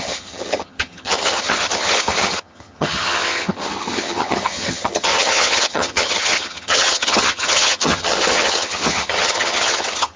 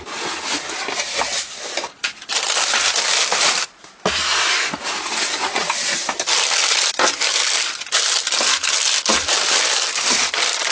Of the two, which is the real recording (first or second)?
second